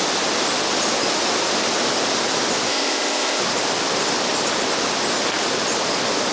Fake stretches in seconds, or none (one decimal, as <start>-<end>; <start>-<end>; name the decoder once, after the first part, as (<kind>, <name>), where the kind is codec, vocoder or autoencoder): 2.7-3.4 (codec, ZipCodec)